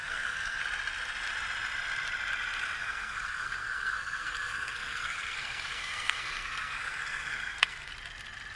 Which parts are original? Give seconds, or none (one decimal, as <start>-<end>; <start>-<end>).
0.6-2.8; 7.9-8.6